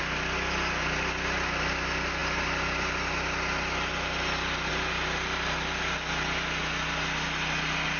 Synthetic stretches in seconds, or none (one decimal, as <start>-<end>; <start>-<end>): none